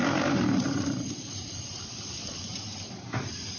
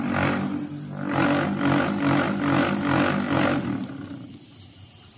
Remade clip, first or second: first